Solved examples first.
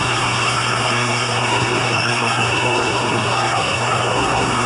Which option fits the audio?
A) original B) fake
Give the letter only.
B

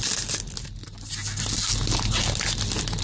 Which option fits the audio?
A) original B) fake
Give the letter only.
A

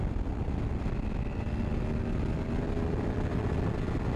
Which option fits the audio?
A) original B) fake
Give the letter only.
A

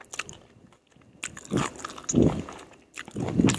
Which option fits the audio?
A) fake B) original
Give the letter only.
B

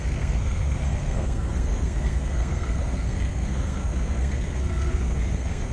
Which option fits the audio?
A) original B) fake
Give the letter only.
B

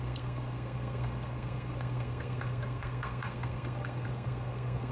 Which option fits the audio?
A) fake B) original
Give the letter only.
A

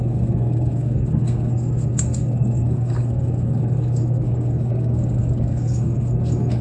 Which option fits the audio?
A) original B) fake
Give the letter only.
B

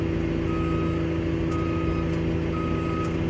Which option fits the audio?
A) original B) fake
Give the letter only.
A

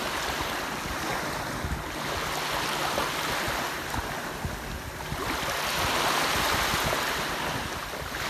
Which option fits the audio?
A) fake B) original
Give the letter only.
B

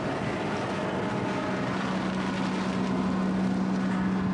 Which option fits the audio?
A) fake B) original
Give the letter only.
B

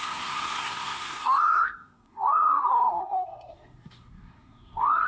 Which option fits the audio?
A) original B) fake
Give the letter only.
B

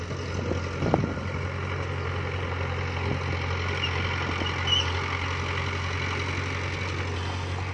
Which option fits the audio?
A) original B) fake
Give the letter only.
A